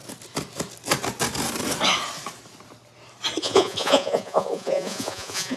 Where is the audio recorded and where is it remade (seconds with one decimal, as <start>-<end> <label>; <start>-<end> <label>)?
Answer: 0.0-3.4 recorded; 3.4-5.6 remade